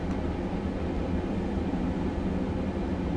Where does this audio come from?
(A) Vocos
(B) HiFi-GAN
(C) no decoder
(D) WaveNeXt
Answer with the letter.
C